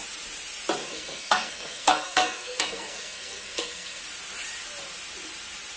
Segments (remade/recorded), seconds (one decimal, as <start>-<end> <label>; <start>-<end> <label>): 0.0-0.8 recorded; 0.8-4.0 remade; 4.0-5.8 recorded